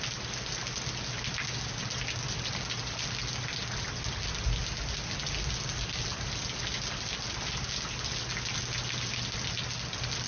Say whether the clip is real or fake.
real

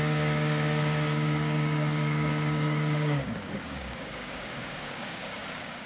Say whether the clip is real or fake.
fake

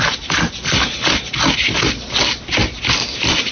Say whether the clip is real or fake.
real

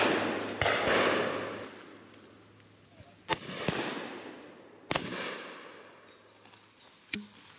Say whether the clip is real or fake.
real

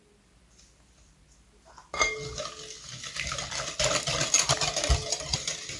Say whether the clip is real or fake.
real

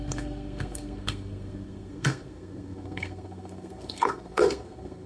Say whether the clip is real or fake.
fake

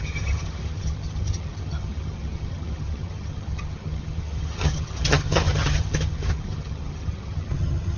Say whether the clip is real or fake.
fake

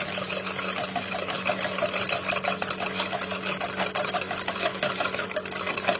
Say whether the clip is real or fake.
real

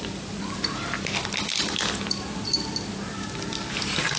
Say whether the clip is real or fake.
real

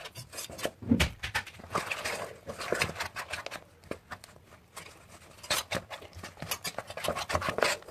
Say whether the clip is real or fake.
real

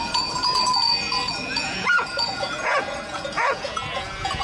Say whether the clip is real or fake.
fake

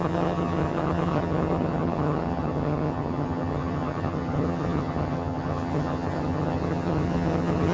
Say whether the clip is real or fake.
fake